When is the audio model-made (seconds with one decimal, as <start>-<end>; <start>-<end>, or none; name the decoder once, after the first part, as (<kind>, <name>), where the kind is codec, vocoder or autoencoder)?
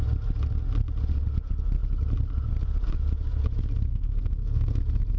3.9-4.8 (codec, SNAC)